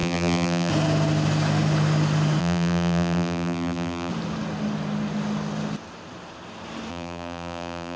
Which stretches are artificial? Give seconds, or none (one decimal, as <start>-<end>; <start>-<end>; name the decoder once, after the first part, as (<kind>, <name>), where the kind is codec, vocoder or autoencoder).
0.0-0.7 (vocoder, BigVGAN v2); 2.4-4.1; 6.9-8.0